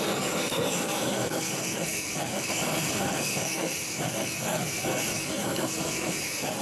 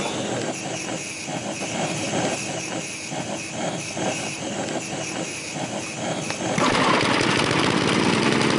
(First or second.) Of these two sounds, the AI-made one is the first